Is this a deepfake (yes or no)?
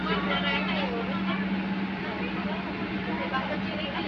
no